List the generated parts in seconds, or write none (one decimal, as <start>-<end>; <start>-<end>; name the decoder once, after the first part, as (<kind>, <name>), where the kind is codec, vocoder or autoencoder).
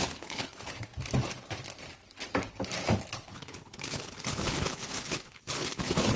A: 0.0-0.9 (codec, HILCodec); 3.1-6.2